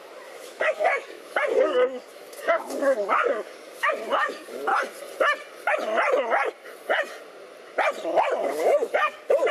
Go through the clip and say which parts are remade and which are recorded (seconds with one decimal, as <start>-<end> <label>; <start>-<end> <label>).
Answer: 0.0-4.7 remade; 4.7-8.4 recorded; 8.4-9.5 remade